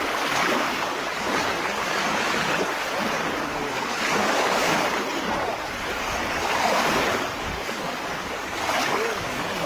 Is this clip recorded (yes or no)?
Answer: no